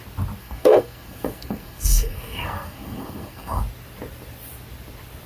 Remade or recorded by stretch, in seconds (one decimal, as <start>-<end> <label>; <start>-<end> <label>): 0.0-0.4 recorded; 0.4-3.6 remade; 3.6-5.3 recorded